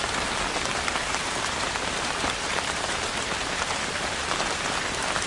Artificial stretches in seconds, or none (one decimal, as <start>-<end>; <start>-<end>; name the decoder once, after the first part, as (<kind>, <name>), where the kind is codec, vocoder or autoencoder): 1.0-4.2 (vocoder, BigVGAN v2)